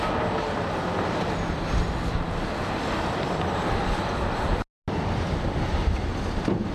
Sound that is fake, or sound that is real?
real